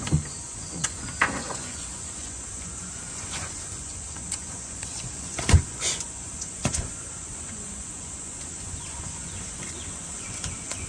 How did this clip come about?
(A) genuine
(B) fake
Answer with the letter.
B